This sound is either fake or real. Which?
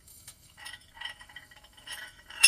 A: fake